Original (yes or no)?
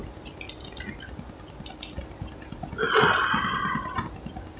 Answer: yes